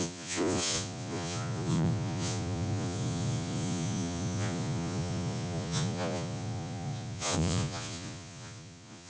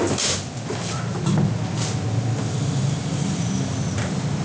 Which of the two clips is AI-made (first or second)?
first